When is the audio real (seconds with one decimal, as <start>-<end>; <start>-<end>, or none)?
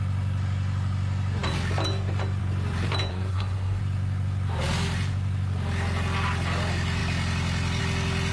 0.0-3.1; 3.8-8.3